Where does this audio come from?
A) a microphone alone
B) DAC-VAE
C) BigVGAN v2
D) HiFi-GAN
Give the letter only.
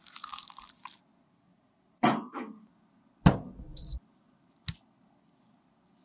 A